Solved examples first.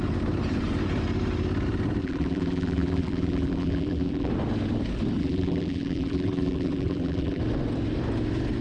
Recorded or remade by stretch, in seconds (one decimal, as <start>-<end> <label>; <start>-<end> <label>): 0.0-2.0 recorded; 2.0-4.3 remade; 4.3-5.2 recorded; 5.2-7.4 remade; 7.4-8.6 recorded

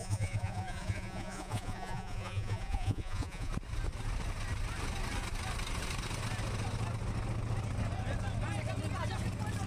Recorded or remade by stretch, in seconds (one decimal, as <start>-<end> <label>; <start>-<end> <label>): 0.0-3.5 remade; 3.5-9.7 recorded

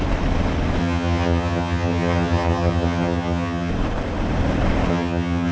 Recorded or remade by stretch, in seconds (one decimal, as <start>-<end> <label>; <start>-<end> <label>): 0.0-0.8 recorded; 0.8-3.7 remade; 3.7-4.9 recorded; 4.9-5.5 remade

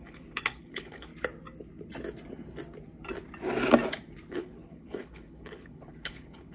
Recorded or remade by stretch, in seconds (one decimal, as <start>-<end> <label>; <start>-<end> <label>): 0.0-1.1 remade; 1.1-4.3 recorded; 4.3-6.5 remade

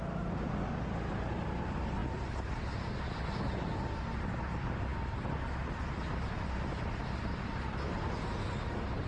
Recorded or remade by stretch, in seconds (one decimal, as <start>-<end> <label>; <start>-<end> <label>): 0.0-9.1 recorded